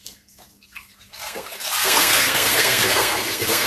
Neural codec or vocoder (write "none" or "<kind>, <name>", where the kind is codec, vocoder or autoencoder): codec, SNAC